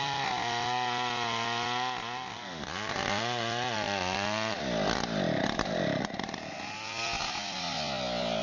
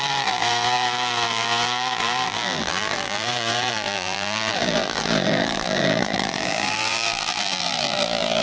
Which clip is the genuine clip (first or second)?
first